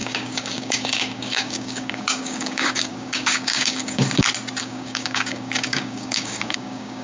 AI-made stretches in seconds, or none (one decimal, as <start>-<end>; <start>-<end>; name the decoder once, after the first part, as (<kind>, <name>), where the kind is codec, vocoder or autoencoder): 0.0-4.0 (codec, DAC); 4.6-7.0

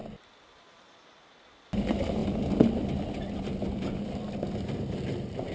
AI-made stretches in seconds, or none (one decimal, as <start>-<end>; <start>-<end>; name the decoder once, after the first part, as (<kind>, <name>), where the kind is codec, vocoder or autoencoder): none

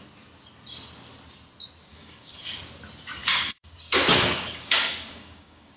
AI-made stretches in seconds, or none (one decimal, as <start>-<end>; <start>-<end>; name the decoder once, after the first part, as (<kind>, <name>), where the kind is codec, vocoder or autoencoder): 1.9-2.6 (codec, DAC); 3.2-5.8

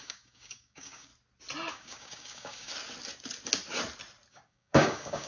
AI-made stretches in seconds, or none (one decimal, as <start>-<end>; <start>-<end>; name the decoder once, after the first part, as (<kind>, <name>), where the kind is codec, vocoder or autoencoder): 0.0-1.1 (codec, DAC); 1.7-2.7; 4.3-5.3

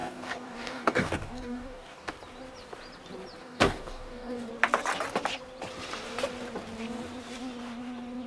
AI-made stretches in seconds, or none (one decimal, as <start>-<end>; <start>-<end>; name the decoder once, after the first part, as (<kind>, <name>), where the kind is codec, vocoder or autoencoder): 0.0-2.1 (codec, DAC); 3.4-4.5